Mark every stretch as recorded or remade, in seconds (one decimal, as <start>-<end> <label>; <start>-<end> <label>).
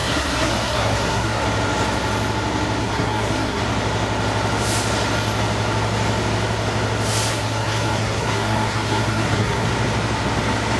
0.0-1.4 remade; 1.4-2.8 recorded; 2.8-3.6 remade; 3.6-7.3 recorded; 7.3-9.7 remade; 9.7-10.8 recorded